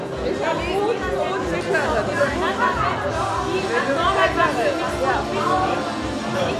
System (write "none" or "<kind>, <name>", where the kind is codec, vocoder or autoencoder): none